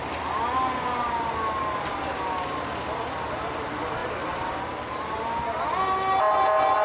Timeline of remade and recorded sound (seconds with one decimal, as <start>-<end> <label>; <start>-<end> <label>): 0.0-6.8 recorded